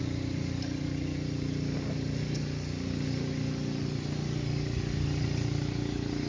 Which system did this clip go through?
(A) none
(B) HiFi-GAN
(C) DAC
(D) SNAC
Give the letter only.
A